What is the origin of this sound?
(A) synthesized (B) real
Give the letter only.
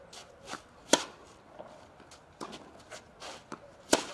B